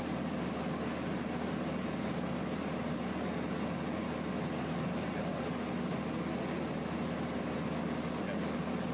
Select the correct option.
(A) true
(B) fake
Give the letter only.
A